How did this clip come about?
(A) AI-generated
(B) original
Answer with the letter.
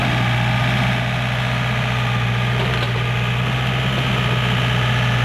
B